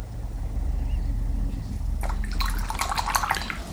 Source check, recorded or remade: recorded